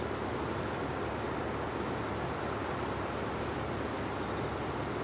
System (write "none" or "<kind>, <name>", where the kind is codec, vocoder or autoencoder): none